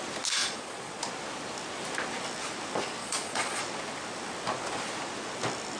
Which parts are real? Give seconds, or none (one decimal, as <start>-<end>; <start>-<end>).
0.0-0.4; 1.0-3.0; 3.6-5.8

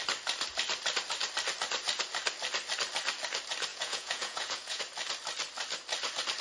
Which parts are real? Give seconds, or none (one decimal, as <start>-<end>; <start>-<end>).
0.0-3.7; 4.8-6.4

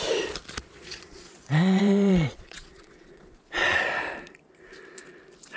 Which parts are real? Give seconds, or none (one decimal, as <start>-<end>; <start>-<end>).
0.0-0.6; 3.8-5.6